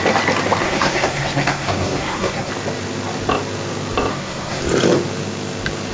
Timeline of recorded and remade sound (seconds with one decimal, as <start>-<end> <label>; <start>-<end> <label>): 0.0-0.6 recorded; 0.6-2.5 remade; 2.5-4.1 recorded; 4.1-4.6 remade; 4.6-5.9 recorded